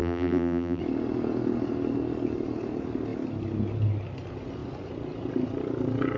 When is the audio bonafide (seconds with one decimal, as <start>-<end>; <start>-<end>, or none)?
0.8-6.2